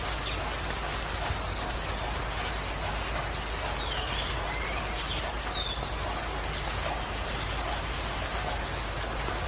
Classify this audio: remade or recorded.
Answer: recorded